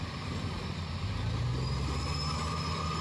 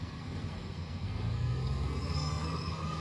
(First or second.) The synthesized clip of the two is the second